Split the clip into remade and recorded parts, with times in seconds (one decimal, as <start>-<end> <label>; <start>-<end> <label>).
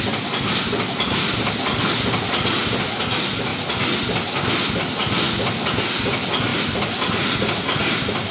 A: 0.0-8.3 recorded